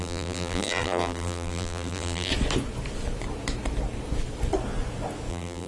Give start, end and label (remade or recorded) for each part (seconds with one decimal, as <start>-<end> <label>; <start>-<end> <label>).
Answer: 0.0-2.3 remade; 2.3-5.3 recorded; 5.3-5.7 remade